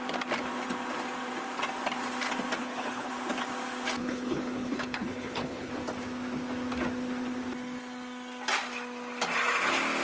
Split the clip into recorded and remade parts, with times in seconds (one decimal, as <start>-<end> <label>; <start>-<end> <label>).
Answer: 0.0-2.6 recorded; 2.6-3.1 remade; 3.1-4.0 recorded; 4.0-5.7 remade; 5.7-10.0 recorded